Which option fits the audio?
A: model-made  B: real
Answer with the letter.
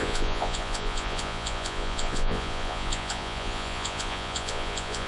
A